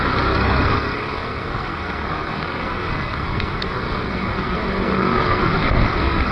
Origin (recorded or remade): remade